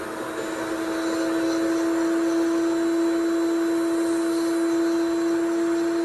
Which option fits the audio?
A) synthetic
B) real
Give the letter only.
B